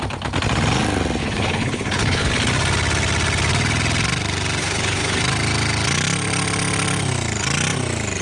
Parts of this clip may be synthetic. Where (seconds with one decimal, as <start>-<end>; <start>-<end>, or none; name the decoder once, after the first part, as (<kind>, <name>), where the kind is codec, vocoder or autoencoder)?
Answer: 1.2-2.3 (codec, HILCodec); 4.6-5.2